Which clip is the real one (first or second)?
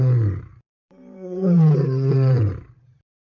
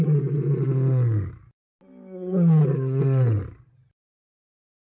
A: second